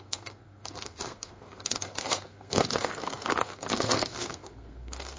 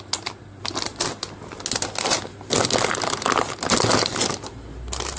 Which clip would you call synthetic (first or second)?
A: first